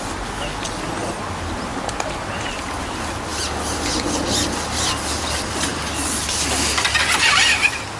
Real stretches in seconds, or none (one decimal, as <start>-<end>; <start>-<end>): 0.0-8.0